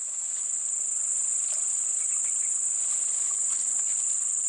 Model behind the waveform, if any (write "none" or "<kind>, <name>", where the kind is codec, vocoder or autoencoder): none